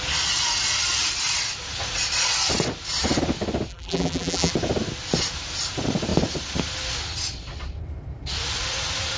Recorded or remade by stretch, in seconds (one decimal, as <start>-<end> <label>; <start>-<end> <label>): 0.0-3.7 recorded; 3.7-4.5 remade; 4.5-9.2 recorded